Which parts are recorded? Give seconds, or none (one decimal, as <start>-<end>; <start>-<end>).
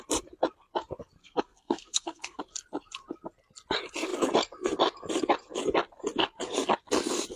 0.0-1.2; 2.4-7.4